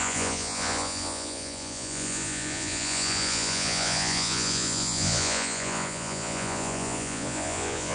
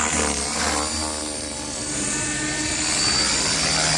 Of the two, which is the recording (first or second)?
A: second